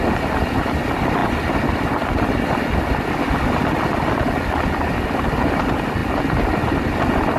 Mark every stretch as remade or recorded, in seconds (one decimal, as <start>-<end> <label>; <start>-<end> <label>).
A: 0.0-7.4 recorded